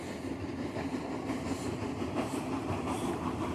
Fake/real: fake